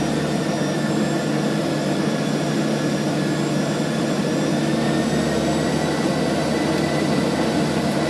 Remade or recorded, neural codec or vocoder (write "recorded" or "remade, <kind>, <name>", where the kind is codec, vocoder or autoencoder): recorded